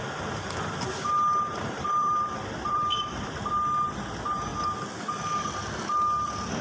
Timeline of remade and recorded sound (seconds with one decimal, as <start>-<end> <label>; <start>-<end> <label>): 0.0-1.5 recorded; 1.5-3.5 remade; 3.5-6.6 recorded